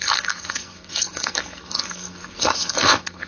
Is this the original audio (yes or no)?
no